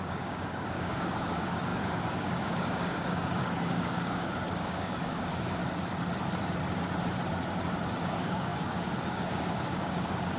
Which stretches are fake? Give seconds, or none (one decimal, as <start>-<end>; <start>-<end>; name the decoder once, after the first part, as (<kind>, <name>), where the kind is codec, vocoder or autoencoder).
0.0-5.6 (codec, DAC); 8.0-10.4